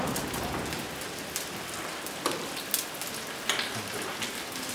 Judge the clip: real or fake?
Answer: real